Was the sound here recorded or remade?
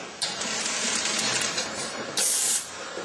remade